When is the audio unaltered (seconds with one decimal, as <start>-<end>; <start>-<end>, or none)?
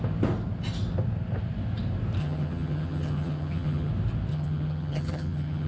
0.0-2.2; 3.9-4.3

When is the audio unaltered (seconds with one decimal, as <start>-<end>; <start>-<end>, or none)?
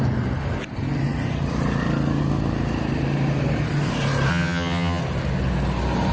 0.0-4.3; 5.0-6.1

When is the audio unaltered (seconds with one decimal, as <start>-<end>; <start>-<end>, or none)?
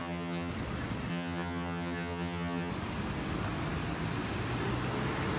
0.5-1.1; 2.7-5.4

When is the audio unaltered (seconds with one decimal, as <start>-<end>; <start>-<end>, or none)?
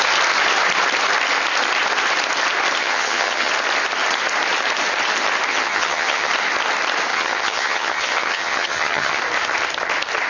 0.0-2.8; 3.5-5.5; 6.3-7.1; 9.2-10.3